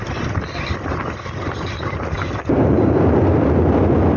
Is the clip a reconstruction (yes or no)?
no